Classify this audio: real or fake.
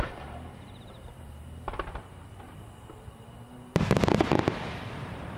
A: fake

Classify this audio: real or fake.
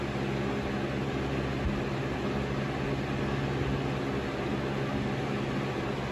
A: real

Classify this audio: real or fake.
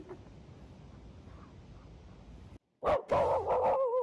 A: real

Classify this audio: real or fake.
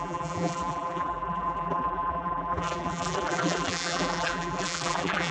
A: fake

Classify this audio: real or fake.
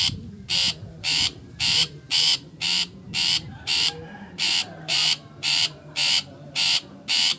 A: fake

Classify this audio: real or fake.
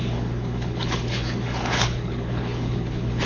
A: fake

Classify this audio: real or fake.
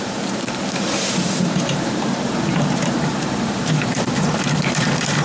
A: fake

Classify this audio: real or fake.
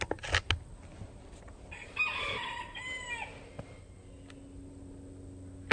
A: real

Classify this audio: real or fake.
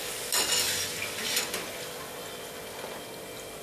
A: real